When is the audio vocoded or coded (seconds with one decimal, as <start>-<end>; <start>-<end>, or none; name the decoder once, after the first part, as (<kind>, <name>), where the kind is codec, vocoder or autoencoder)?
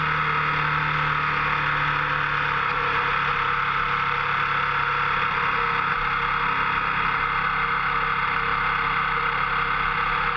none